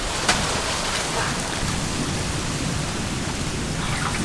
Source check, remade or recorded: recorded